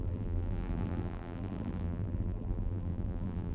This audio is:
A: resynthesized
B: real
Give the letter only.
A